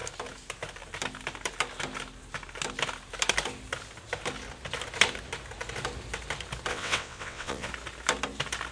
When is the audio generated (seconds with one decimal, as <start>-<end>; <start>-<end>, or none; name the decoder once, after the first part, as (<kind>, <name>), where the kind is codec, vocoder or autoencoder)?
6.7-7.7 (vocoder, WaveNeXt)